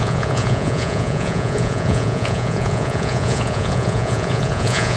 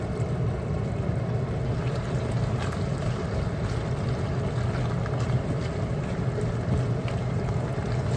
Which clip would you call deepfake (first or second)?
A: first